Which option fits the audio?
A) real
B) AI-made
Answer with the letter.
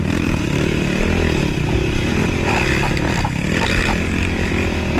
A